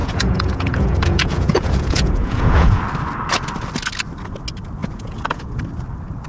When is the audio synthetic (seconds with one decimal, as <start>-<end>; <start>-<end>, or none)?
0.0-2.8; 4.8-5.6